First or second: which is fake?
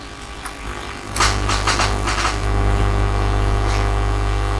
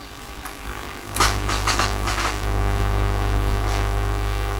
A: second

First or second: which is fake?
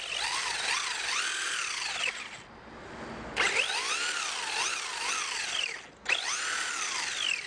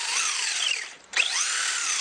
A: second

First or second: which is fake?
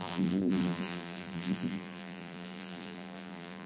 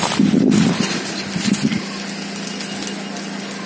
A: first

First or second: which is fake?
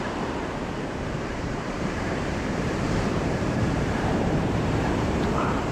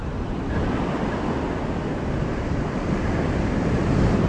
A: first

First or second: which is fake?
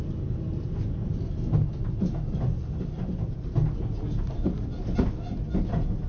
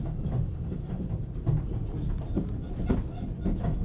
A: second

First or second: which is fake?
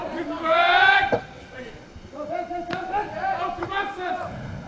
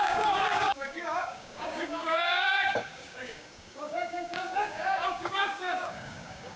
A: second